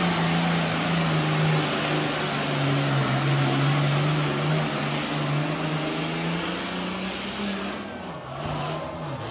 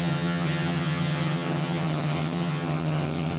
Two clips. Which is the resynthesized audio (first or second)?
second